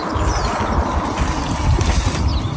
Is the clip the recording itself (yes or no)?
yes